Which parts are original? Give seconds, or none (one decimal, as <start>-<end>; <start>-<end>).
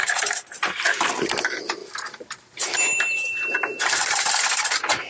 1.1-1.8; 4.3-5.1